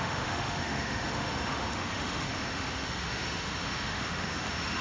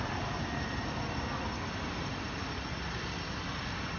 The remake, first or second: first